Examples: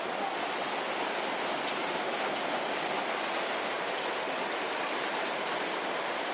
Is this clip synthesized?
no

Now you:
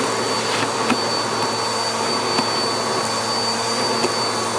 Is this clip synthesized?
no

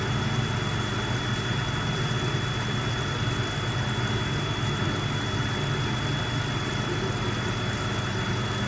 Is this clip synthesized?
no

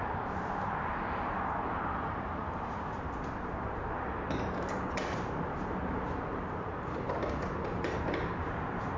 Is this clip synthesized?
yes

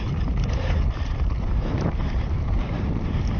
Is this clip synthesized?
yes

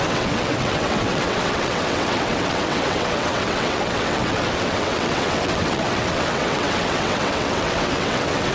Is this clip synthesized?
yes